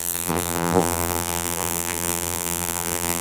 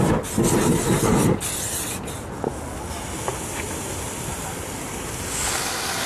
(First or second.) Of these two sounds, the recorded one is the second